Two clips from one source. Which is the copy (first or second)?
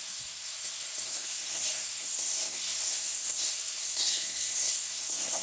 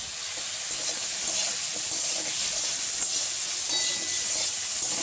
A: first